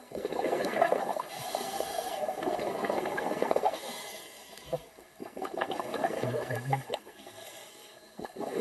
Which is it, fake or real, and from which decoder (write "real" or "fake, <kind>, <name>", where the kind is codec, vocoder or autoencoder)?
fake, codec, SNAC